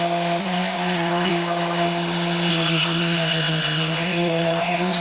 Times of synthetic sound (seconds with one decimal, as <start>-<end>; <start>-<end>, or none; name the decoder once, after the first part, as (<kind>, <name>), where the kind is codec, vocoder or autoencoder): 0.4-1.3 (codec, ZipCodec); 2.5-5.0